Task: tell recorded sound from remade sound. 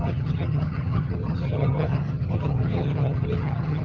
remade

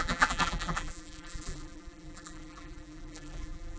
remade